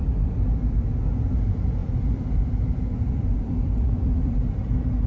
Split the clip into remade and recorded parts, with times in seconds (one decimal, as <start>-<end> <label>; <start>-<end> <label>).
0.0-1.8 recorded; 1.8-5.1 remade